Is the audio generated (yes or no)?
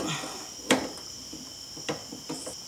no